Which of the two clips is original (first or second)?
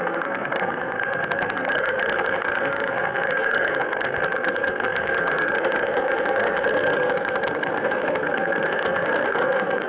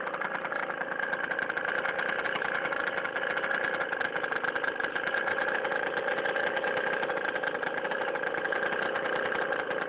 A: second